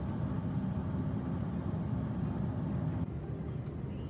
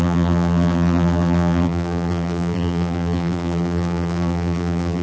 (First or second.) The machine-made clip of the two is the second